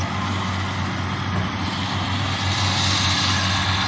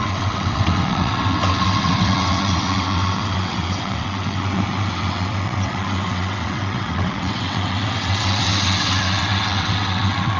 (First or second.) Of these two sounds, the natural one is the first